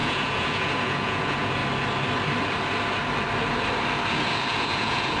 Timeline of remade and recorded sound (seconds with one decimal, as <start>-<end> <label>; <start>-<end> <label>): 0.0-1.6 remade; 1.6-4.1 recorded; 4.1-5.2 remade